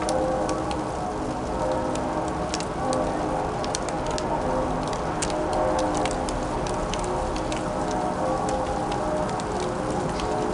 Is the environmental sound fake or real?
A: real